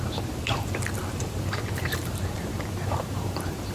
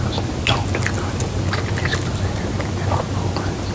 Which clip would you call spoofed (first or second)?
first